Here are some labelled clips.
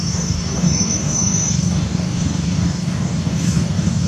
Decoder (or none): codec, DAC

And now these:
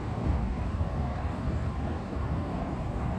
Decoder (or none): codec, DAC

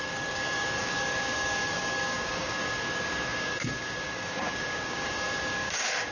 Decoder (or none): codec, DAC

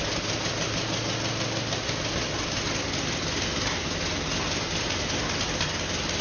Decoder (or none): none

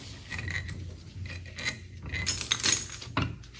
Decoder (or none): none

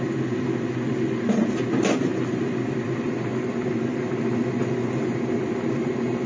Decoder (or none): none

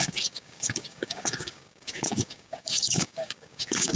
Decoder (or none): codec, DAC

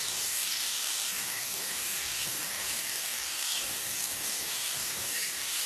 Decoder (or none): codec, DAC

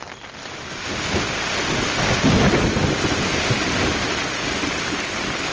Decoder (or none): none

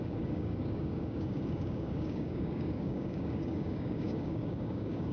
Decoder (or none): codec, DAC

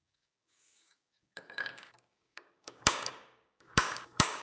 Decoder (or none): codec, DAC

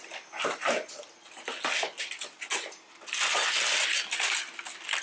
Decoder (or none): none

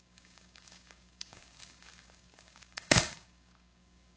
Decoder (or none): codec, DAC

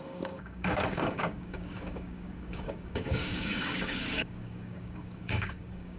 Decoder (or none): codec, DAC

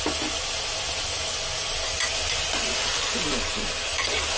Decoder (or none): none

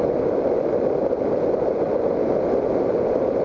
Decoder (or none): none